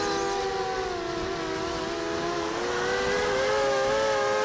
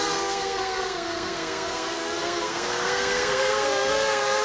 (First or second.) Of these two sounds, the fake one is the second